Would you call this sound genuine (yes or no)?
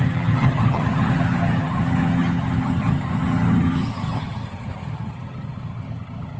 no